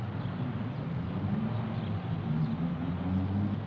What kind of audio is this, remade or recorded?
recorded